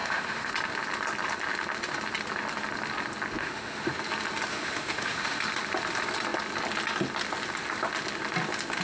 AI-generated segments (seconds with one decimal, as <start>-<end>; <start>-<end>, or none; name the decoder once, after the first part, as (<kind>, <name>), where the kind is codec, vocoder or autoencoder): 0.0-0.5 (autoencoder, DAC-VAE); 3.4-4.0; 4.5-5.4